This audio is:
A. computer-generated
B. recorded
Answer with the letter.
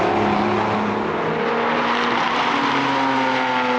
B